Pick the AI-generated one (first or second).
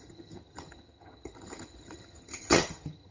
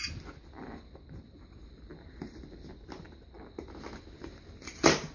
first